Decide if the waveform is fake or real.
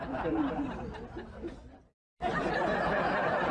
real